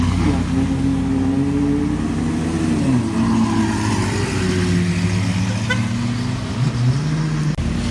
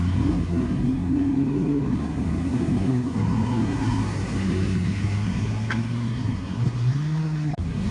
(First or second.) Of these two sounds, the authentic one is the first